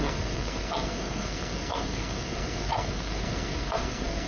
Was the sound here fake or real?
fake